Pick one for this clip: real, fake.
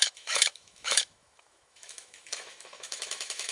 fake